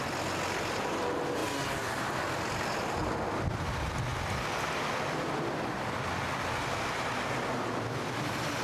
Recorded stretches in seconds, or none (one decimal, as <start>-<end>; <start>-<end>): 0.0-8.6